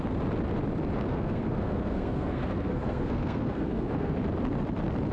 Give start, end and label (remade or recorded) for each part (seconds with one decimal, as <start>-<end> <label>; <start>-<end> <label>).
0.0-1.1 recorded; 1.1-4.2 remade; 4.2-5.1 recorded